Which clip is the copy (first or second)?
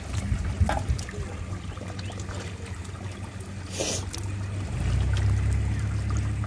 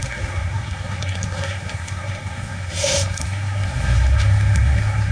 second